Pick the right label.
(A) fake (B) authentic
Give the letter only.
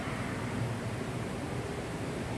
A